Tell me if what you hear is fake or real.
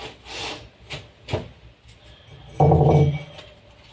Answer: real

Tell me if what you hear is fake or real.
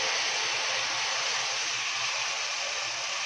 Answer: real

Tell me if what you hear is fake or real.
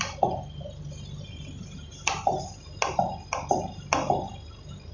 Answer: real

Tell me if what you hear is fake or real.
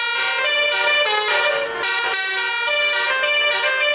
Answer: real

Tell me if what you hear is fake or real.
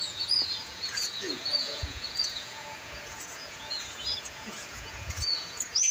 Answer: fake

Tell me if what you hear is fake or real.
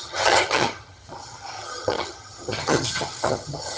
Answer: fake